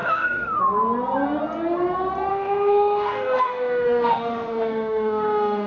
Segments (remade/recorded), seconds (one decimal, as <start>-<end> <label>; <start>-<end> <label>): 0.0-0.6 remade; 0.6-2.3 recorded; 2.3-5.7 remade